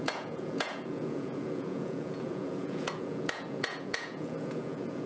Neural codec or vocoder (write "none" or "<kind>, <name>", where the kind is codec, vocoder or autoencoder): vocoder, Vocos